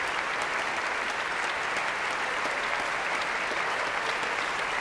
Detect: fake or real real